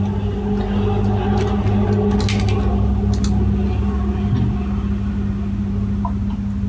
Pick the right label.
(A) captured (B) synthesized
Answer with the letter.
A